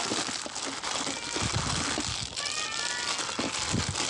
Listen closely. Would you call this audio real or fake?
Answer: real